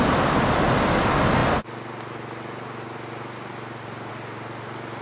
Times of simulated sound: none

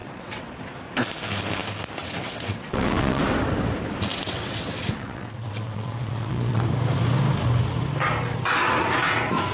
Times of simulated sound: 0.0-0.5 (vocoder, WaveNeXt); 2.0-3.2; 4.1-6.6

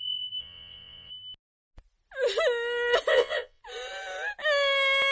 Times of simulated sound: 0.4-1.1 (vocoder, WaveNeXt); 3.1-3.6

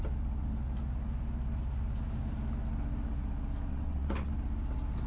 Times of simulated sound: 3.7-4.3 (vocoder, WaveNeXt)

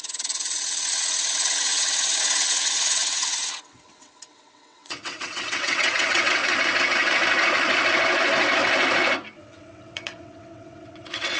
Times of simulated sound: 0.0-6.4 (vocoder, WaveNeXt); 9.4-11.4

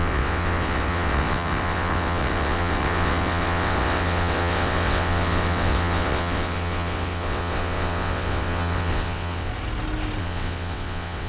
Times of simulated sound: 0.0-9.5 (vocoder, WaveNeXt); 10.2-11.3